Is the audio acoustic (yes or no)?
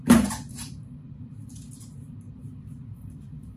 no